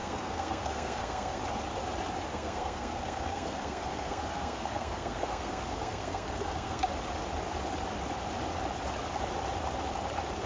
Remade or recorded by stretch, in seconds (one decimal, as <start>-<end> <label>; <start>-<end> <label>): 0.0-1.4 remade; 1.4-2.3 recorded; 2.3-6.9 remade; 6.9-10.5 recorded